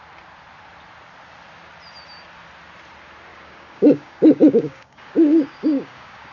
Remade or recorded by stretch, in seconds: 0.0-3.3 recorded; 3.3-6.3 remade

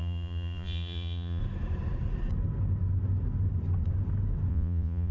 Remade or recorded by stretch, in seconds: 0.0-1.4 remade; 1.4-4.5 recorded; 4.5-5.1 remade

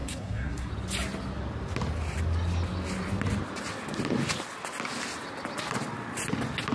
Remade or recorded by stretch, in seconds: 0.0-0.7 remade; 0.7-6.7 recorded

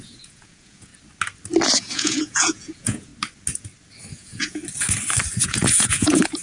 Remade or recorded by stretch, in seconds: 0.0-0.9 remade; 0.9-1.8 recorded; 1.8-3.1 remade; 3.1-4.1 recorded; 4.1-4.6 remade; 4.6-5.4 recorded; 5.4-6.4 remade

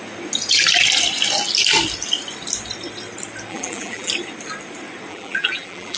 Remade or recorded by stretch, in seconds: 0.0-3.5 recorded; 3.5-4.1 remade; 4.1-5.1 recorded; 5.1-6.0 remade

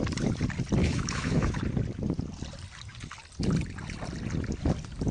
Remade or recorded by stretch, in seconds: 0.0-0.8 recorded; 0.8-1.6 remade; 1.6-5.1 recorded

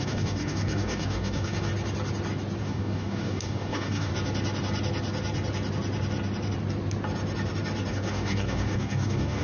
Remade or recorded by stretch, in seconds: 0.0-1.7 remade; 1.7-2.6 recorded; 2.6-4.1 remade; 4.1-7.9 recorded; 7.9-9.4 remade